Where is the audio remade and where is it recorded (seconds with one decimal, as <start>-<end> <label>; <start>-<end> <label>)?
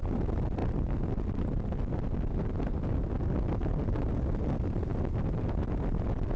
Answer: 0.0-6.4 recorded